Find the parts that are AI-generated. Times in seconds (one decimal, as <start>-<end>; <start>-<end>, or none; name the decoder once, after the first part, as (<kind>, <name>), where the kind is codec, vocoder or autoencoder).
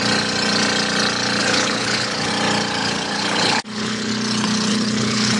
1.4-2.3 (codec, HILCodec); 2.8-4.1; 4.7-5.4